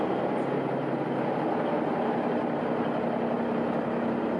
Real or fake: real